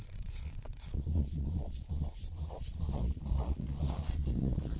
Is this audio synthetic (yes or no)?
yes